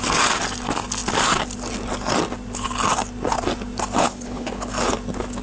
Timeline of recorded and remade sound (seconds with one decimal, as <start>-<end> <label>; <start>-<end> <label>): 0.0-4.0 recorded; 4.0-4.7 remade; 4.7-5.4 recorded